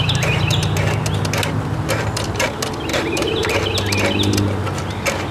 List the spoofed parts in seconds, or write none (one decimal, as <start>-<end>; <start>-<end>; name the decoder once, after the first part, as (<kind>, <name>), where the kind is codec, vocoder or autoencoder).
2.9-3.5 (vocoder, BigVGAN v2)